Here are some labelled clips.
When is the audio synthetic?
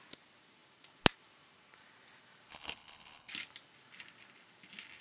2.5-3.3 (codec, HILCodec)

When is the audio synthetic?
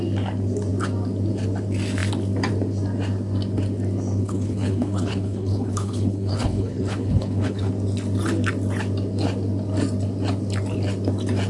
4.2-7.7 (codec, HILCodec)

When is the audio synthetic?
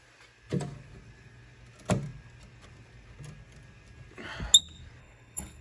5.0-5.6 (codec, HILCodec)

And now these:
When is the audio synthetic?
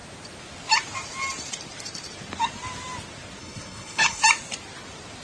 3.4-4.2 (codec, HILCodec)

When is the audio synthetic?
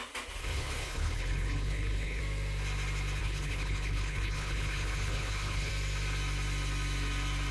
0.4-2.2 (codec, HILCodec); 3.2-5.7